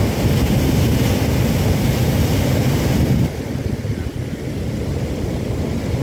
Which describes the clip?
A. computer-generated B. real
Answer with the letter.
B